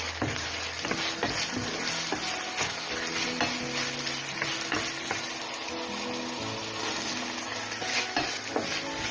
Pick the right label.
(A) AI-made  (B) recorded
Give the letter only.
B